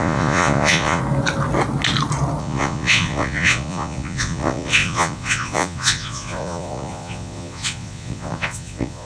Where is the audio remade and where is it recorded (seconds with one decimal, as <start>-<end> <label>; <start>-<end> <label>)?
0.0-1.0 remade; 1.0-2.4 recorded; 2.4-9.1 remade

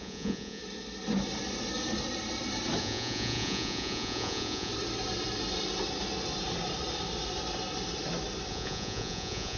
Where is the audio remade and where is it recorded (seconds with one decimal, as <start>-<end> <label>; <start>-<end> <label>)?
0.0-0.6 remade; 0.6-2.8 recorded; 2.8-4.7 remade; 4.7-8.5 recorded; 8.5-9.6 remade

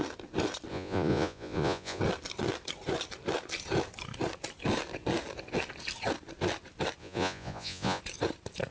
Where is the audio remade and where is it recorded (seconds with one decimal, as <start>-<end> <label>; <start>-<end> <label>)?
0.0-0.7 recorded; 0.7-2.0 remade; 2.0-7.0 recorded; 7.0-8.0 remade; 8.0-8.7 recorded

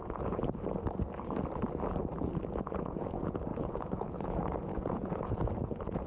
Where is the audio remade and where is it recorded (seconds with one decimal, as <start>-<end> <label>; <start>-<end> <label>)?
0.0-0.4 remade; 0.4-2.6 recorded; 2.6-6.1 remade

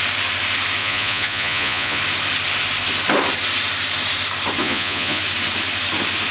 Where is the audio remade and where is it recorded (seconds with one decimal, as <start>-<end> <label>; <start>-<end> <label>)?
0.0-0.8 recorded; 0.8-2.0 remade; 2.0-4.6 recorded; 4.6-5.2 remade; 5.2-6.3 recorded